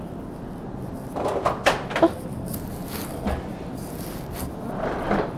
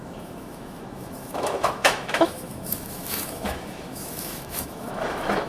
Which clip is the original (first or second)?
first